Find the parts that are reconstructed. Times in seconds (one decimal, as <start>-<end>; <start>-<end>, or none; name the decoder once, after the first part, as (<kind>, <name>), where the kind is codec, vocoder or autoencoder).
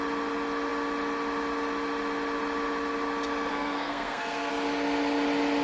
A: 3.5-4.5 (codec, SNAC)